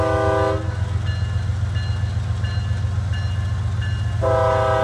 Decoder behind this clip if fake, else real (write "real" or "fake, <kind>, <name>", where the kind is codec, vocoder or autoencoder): real